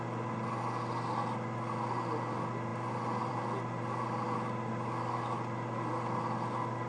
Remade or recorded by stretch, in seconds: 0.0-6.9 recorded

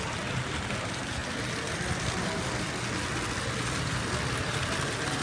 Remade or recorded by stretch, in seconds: 0.0-5.2 recorded

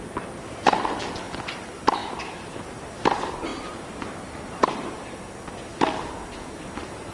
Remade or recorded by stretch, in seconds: 0.0-2.0 recorded; 2.0-2.9 remade; 2.9-3.5 recorded; 3.5-4.5 remade; 4.5-7.1 recorded

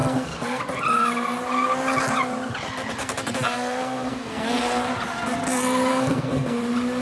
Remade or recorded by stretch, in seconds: 0.0-0.6 remade; 0.6-3.0 recorded; 3.0-4.9 remade; 4.9-5.9 recorded; 5.9-6.6 remade; 6.6-7.0 recorded

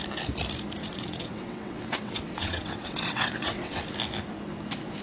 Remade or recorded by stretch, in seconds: 0.0-0.8 recorded; 0.8-3.8 remade; 3.8-5.0 recorded

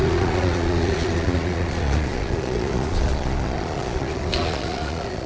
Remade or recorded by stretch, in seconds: 0.0-5.3 remade